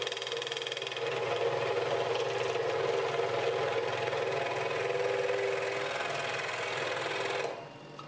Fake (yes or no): no